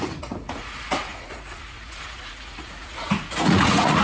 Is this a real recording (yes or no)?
no